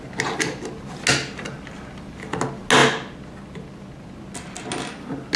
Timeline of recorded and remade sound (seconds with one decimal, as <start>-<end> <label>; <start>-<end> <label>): 0.0-5.4 recorded